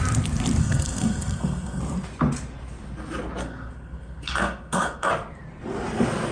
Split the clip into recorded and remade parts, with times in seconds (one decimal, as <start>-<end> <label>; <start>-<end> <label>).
0.0-0.6 recorded; 0.6-1.8 remade; 1.8-3.4 recorded; 3.4-5.1 remade; 5.1-6.3 recorded